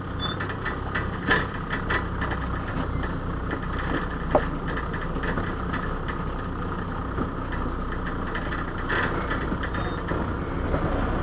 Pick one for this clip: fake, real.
real